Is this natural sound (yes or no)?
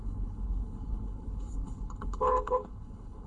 no